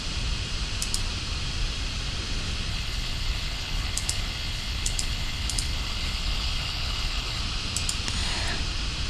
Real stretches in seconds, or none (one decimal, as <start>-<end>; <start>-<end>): 0.0-2.7; 7.4-9.1

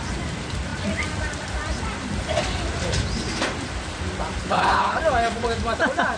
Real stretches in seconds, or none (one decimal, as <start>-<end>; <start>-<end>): 0.0-4.4; 5.0-6.2

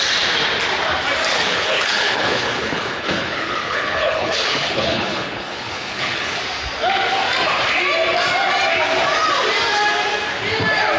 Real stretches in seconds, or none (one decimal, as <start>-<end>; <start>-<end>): 0.0-1.3; 6.4-11.0

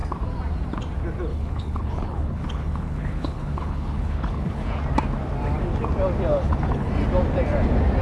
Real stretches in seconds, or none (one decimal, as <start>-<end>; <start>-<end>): 0.0-1.3; 4.7-6.3; 6.9-8.0